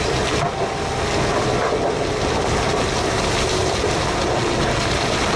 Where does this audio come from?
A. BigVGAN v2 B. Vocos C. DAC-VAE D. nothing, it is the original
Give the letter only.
D